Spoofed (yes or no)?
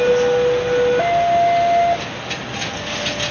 no